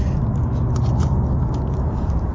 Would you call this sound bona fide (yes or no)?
yes